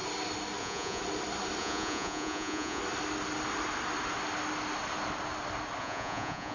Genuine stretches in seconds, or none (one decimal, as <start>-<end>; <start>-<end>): 0.0-0.6; 1.0-1.6; 2.8-5.8